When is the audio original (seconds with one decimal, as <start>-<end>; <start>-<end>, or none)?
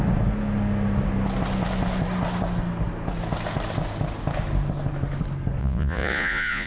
0.0-5.6